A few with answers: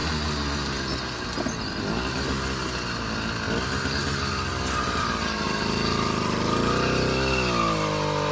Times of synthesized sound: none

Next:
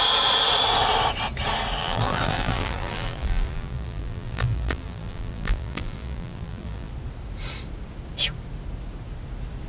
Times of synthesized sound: 1.8-6.9 (vocoder, BigVGAN v2)

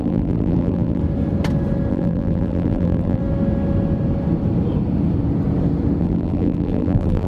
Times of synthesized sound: 0.0-1.0 (vocoder, BigVGAN v2); 1.9-3.2; 6.0-7.3

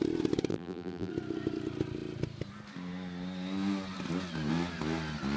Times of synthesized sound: 0.5-1.1 (vocoder, BigVGAN v2)

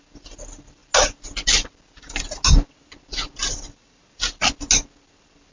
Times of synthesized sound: 3.4-4.0 (vocoder, BigVGAN v2)

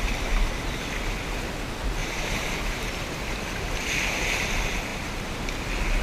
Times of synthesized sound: 2.0-3.4 (vocoder, BigVGAN v2); 4.9-5.5

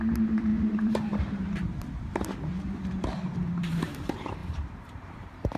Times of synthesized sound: 0.0-2.5 (vocoder, BigVGAN v2); 3.7-5.6